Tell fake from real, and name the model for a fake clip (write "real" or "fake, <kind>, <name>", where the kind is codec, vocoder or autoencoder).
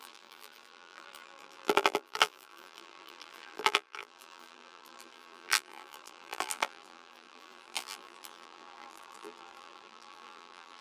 fake, vocoder, BigVGAN v2